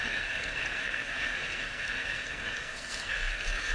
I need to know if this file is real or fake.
fake